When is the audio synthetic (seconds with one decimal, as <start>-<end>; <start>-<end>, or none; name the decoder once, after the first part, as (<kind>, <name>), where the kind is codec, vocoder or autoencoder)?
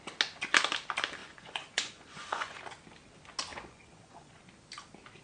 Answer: 1.2-2.6 (vocoder, Vocos); 3.5-4.4